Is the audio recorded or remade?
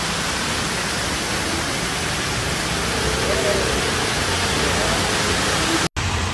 recorded